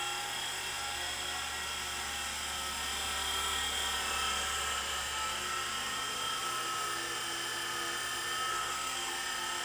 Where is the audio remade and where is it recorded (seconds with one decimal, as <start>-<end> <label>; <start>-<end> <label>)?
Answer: 0.0-8.5 recorded; 8.5-9.1 remade; 9.1-9.6 recorded

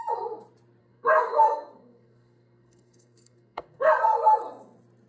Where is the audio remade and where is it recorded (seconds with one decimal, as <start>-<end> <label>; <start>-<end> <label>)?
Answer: 0.0-0.8 recorded; 0.8-3.9 remade; 3.9-5.1 recorded

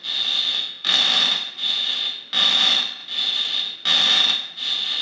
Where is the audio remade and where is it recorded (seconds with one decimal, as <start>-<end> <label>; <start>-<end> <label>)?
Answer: 0.0-0.5 recorded; 0.5-1.0 remade; 1.0-5.0 recorded

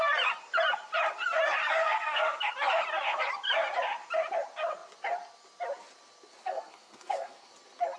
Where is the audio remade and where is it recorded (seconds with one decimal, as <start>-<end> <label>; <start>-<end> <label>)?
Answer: 0.0-1.8 recorded; 1.8-2.4 remade; 2.4-6.4 recorded; 6.4-7.5 remade; 7.5-8.0 recorded

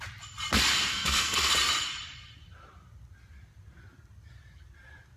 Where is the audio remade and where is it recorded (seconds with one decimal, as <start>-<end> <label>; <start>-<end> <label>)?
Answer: 0.0-0.9 recorded; 0.9-1.5 remade; 1.5-5.2 recorded

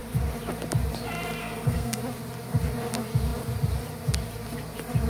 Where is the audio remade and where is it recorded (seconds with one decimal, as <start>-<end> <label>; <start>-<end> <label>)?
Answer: 0.0-1.4 recorded; 1.4-2.0 remade; 2.0-5.1 recorded

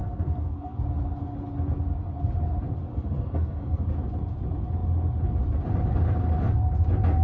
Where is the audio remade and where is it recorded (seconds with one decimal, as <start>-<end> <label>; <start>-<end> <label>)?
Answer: 0.0-0.8 remade; 0.8-2.9 recorded; 2.9-3.8 remade; 3.8-7.2 recorded